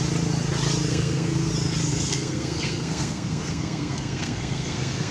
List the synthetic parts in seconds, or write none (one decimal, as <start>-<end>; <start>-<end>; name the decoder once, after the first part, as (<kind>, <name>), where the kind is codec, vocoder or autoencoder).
0.9-1.5 (codec, SNAC); 1.9-5.1